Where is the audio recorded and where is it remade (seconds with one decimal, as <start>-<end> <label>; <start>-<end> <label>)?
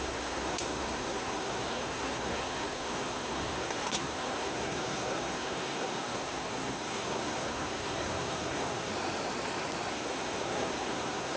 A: 0.0-8.9 remade; 8.9-9.9 recorded; 9.9-11.4 remade